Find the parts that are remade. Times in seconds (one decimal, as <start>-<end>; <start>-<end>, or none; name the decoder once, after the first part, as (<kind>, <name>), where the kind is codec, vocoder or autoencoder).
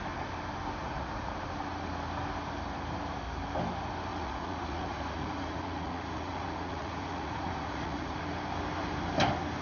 0.8-1.3 (vocoder, Vocos); 4.1-8.2